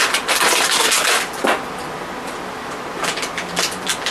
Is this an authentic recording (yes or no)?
yes